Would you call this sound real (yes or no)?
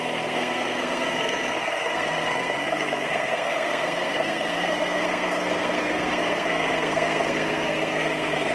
no